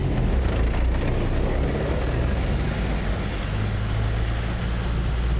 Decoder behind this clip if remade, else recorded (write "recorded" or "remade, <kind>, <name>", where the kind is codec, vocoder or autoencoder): recorded